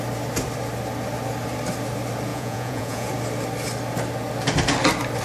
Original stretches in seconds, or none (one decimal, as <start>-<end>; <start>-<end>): 0.0-2.3; 3.1-5.2

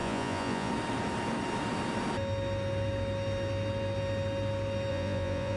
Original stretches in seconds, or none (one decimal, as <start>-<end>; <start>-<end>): 0.7-4.9

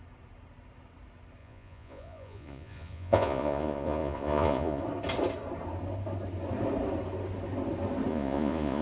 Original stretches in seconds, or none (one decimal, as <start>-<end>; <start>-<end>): 0.0-1.4; 4.8-8.1

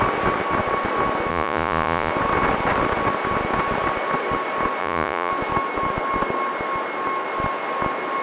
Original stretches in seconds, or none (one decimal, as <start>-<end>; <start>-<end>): 0.0-1.3; 2.1-4.8; 5.3-8.2

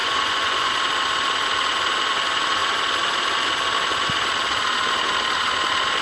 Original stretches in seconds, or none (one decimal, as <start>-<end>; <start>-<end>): 0.7-6.0

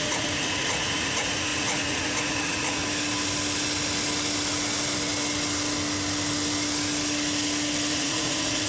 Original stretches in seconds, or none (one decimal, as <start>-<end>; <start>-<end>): 2.8-7.9

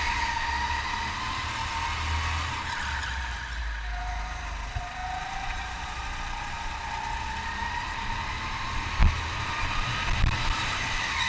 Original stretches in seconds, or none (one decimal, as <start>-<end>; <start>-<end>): 0.0-11.3

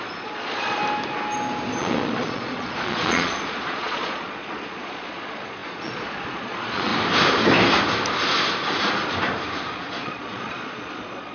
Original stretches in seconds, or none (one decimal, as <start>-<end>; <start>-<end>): 0.8-1.8; 6.9-9.7